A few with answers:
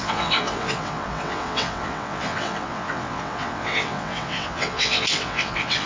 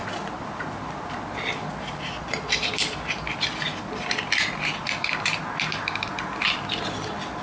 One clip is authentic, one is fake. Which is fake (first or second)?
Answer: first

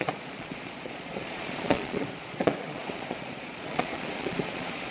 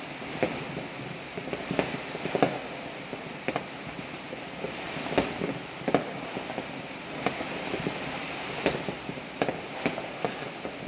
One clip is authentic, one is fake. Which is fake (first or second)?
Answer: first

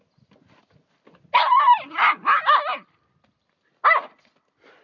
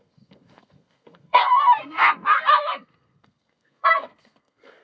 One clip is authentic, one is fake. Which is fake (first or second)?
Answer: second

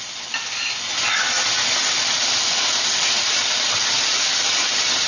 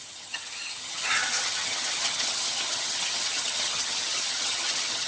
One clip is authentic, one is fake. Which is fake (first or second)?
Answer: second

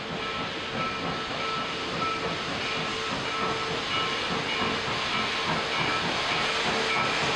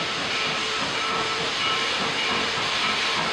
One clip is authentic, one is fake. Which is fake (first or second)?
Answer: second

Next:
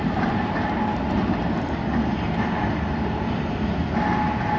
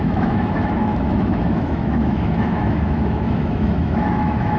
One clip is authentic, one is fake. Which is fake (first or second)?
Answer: second